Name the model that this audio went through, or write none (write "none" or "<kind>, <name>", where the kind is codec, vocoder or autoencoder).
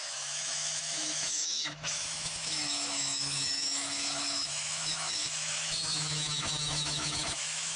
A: autoencoder, DAC-VAE